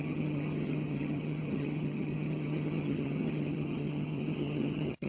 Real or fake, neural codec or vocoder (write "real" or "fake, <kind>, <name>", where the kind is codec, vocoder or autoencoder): fake, vocoder, HiFi-GAN